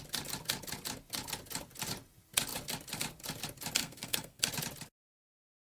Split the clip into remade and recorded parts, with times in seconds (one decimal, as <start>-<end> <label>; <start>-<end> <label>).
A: 0.0-3.8 recorded; 3.8-4.4 remade; 4.4-5.7 recorded